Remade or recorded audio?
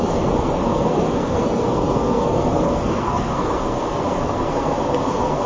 remade